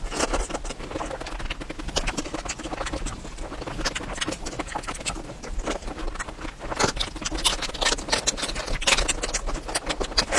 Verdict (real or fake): fake